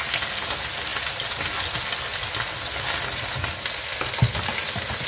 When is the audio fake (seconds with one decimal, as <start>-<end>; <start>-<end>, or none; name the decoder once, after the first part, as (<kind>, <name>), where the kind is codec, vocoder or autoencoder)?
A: none